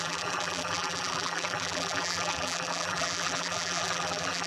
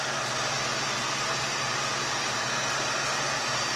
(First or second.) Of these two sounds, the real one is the second